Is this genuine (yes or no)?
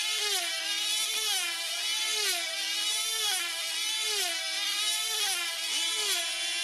yes